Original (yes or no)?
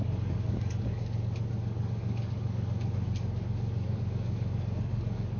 no